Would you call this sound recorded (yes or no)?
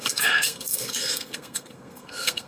no